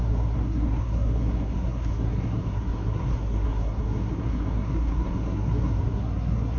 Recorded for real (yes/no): no